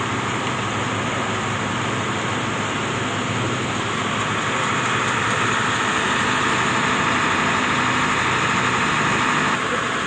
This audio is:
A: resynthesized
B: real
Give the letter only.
B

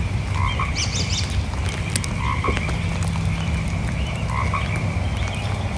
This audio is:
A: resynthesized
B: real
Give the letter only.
B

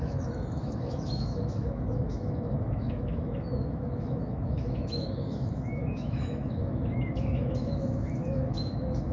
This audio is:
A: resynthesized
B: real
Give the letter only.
A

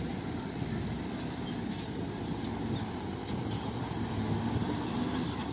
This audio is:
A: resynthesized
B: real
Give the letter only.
B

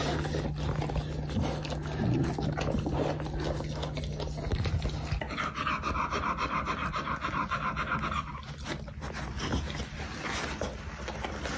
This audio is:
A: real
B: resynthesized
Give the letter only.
A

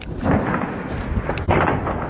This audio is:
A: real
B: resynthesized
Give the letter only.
A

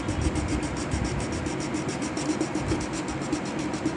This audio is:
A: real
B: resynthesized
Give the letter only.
A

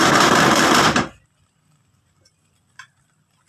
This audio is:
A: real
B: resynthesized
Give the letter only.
B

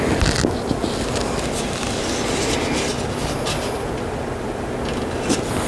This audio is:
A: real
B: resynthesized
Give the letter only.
A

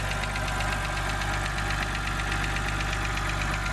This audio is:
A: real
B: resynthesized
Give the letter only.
A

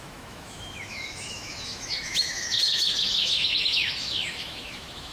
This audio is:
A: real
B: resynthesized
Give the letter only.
B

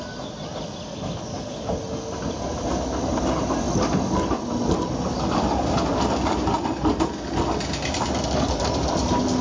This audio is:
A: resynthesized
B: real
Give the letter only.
B